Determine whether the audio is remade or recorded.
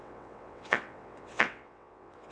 remade